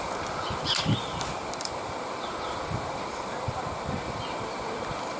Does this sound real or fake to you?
real